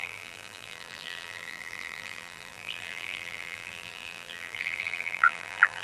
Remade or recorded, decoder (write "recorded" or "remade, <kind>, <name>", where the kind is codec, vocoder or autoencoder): remade, vocoder, BigVGAN v2